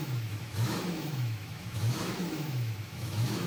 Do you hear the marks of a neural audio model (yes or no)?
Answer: yes